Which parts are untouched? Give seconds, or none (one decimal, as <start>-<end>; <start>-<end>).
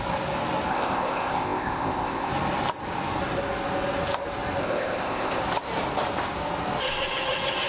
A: 0.0-0.7; 2.3-4.6; 5.4-7.7